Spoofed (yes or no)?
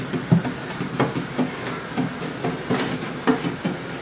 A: no